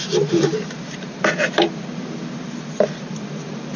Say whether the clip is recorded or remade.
remade